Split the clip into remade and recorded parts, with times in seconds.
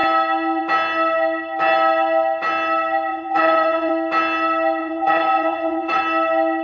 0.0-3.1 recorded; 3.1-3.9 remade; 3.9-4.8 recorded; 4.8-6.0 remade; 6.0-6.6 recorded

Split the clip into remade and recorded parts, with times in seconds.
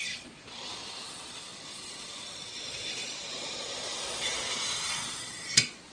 0.0-5.9 remade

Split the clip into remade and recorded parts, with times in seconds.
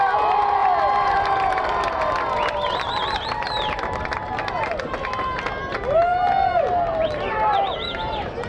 0.0-8.5 recorded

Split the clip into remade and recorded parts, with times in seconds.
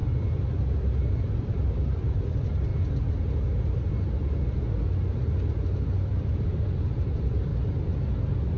0.0-2.7 remade; 2.7-6.3 recorded; 6.3-7.5 remade; 7.5-8.6 recorded